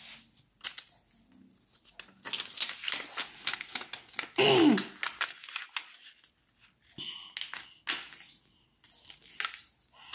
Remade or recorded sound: recorded